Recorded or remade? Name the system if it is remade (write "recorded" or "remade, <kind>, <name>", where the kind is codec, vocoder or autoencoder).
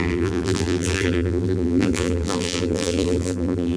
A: remade, vocoder, BigVGAN v2